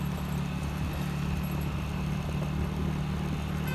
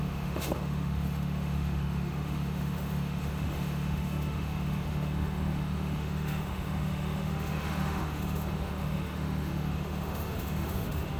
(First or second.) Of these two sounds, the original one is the first